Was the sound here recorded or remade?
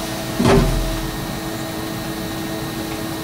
recorded